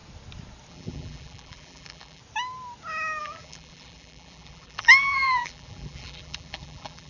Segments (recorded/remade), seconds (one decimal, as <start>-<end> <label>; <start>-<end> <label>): 0.0-0.7 recorded; 0.7-2.2 remade; 2.2-3.2 recorded; 3.2-7.1 remade